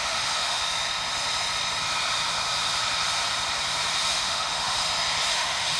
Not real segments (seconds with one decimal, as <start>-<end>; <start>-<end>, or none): 0.0-0.6; 4.1-4.8; 5.3-5.8